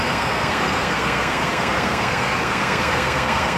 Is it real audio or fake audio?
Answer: fake